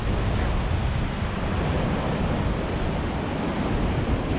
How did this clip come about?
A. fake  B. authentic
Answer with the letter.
B